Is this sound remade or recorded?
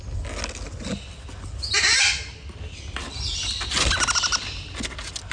recorded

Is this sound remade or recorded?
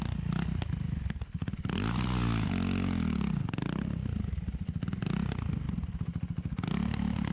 recorded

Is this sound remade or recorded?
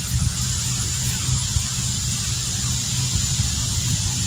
recorded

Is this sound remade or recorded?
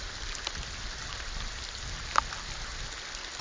recorded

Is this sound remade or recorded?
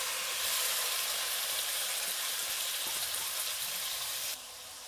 remade